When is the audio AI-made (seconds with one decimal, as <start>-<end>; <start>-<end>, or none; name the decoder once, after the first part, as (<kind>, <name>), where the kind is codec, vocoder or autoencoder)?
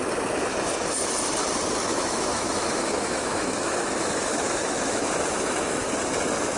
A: 1.9-5.9 (autoencoder, DAC-VAE)